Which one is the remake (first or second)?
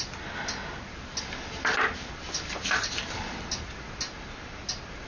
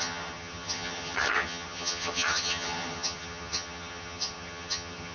second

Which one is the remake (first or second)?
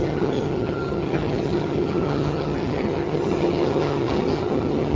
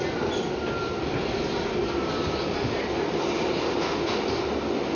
first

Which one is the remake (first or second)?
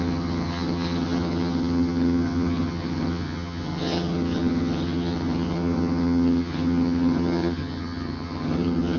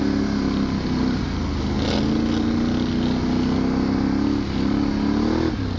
first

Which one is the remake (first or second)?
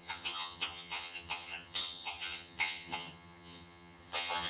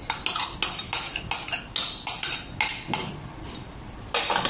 first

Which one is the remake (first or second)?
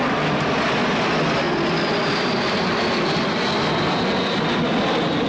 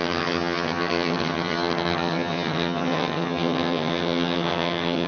second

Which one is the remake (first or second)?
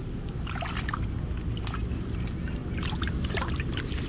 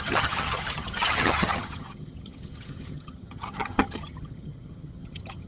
second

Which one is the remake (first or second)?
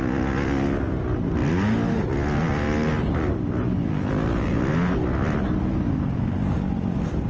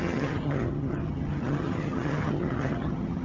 second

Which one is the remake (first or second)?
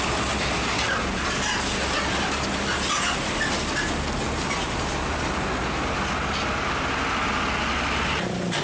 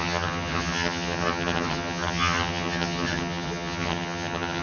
second